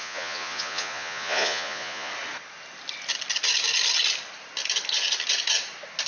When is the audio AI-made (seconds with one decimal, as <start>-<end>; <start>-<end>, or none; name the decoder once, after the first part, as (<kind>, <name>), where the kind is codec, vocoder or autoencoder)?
0.0-2.1 (vocoder, Vocos)